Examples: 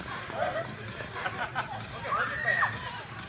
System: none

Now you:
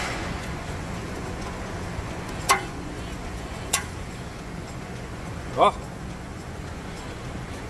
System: vocoder, Vocos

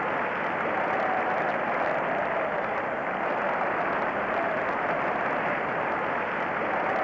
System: none